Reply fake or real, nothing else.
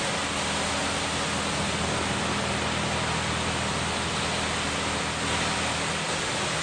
real